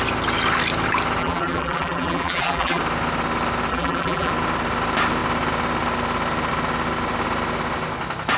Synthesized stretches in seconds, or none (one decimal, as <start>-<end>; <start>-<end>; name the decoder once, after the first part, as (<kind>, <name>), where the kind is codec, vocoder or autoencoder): 1.2-2.8 (vocoder, BigVGAN v2); 3.7-4.3